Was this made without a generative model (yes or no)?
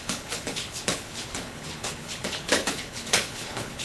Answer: no